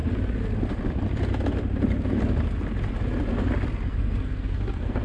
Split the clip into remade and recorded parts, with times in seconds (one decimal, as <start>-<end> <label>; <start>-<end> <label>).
0.0-3.9 recorded; 3.9-5.0 remade